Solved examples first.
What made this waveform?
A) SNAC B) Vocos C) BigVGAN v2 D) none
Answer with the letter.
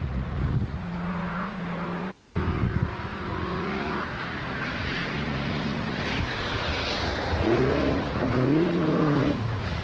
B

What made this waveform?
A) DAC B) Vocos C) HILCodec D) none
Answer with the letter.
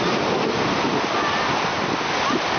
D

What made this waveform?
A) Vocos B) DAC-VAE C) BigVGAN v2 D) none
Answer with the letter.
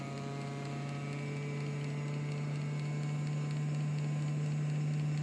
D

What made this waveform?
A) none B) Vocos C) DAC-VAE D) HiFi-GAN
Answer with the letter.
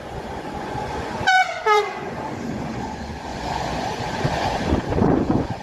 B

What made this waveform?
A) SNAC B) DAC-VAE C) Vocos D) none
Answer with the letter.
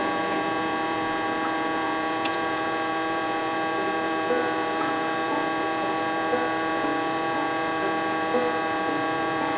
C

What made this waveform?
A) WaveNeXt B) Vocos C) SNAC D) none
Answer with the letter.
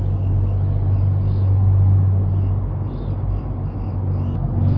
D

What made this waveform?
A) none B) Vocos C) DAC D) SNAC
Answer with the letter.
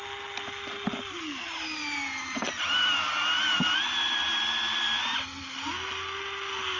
A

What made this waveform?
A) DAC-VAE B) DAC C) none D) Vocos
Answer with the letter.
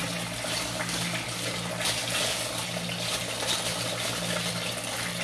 C